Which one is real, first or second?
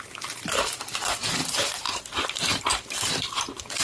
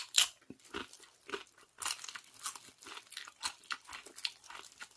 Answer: second